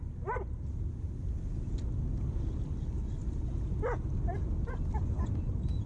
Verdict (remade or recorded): recorded